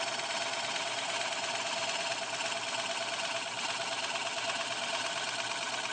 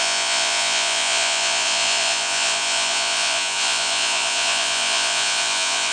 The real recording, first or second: first